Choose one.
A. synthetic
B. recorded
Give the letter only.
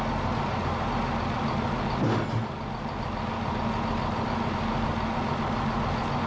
B